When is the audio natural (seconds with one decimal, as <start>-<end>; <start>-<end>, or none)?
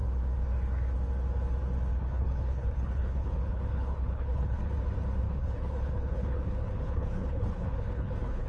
0.0-1.9; 4.7-5.2